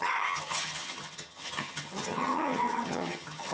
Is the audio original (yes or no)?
no